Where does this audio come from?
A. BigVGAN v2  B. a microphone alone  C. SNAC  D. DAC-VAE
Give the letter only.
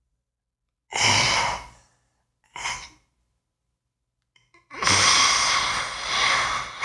B